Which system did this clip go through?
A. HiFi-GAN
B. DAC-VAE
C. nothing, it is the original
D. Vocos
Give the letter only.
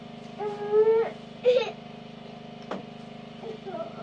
C